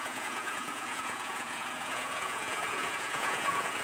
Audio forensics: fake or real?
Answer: fake